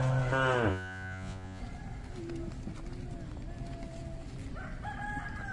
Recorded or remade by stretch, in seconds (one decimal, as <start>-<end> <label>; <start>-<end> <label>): 0.0-0.7 recorded; 0.7-1.6 remade; 1.6-5.5 recorded